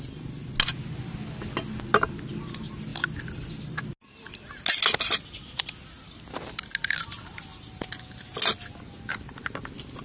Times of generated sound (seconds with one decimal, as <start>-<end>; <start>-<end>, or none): none